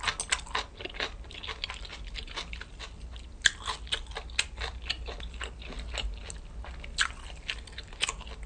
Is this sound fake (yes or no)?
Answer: no